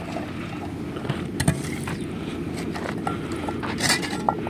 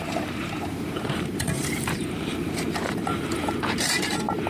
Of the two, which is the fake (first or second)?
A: second